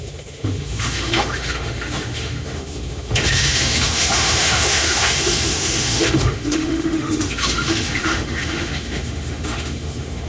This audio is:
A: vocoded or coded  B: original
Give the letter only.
A